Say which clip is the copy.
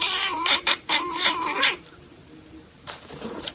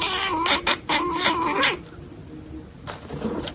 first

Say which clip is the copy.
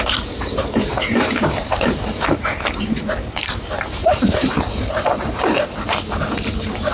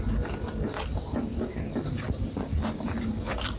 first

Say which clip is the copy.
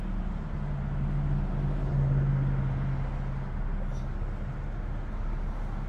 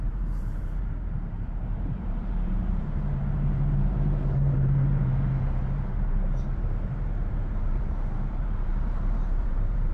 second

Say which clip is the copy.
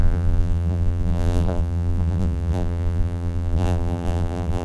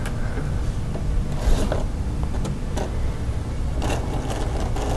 first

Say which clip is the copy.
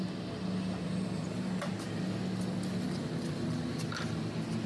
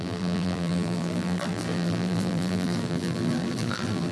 second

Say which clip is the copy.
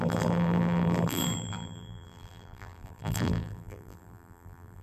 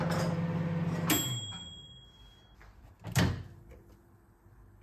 first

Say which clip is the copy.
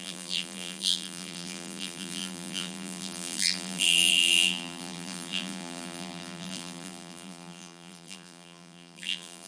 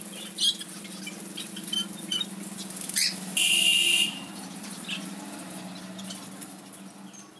first